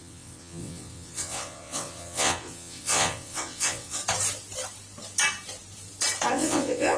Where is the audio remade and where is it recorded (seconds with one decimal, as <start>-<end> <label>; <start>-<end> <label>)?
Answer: 0.0-4.0 remade; 4.0-6.3 recorded; 6.3-7.0 remade